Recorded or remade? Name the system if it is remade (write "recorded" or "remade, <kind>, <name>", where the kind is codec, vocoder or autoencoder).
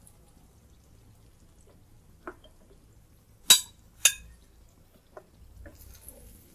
recorded